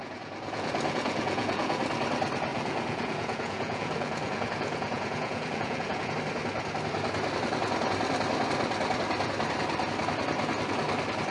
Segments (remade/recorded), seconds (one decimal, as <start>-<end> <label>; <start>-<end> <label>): 0.0-1.8 remade; 1.8-2.5 recorded; 2.5-6.1 remade; 6.1-11.3 recorded